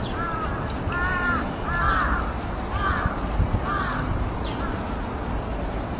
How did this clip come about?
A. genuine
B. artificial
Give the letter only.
A